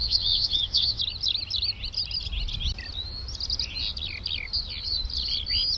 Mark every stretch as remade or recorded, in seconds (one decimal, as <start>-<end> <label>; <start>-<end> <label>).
0.0-1.0 remade; 1.0-5.8 recorded